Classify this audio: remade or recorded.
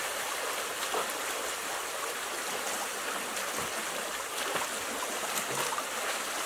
recorded